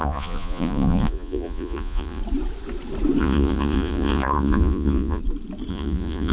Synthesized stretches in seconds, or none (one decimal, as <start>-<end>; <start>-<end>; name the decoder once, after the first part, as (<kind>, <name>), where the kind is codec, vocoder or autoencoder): 0.0-2.2 (vocoder, Vocos); 3.2-5.2; 5.7-6.3